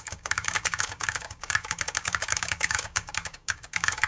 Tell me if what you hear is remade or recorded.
remade